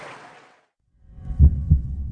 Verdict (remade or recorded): remade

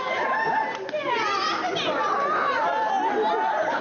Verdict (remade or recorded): recorded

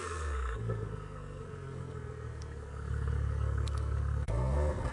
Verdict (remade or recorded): remade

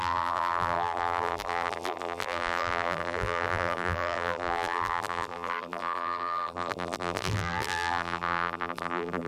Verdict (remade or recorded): remade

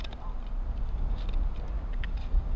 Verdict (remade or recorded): recorded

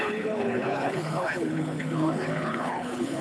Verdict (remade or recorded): remade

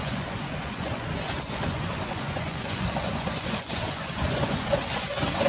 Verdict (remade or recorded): remade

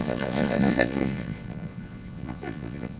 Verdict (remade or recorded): remade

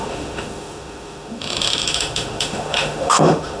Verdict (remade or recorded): remade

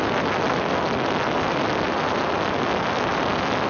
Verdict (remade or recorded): recorded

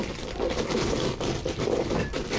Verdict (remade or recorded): recorded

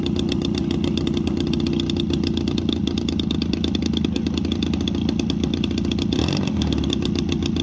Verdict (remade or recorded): recorded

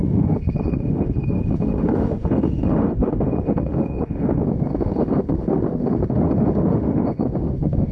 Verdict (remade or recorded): remade